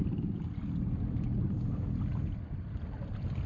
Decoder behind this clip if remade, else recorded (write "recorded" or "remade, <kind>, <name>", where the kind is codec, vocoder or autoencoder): remade, vocoder, BigVGAN v2